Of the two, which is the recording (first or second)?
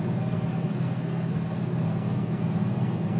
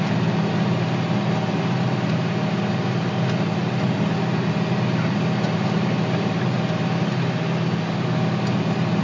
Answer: second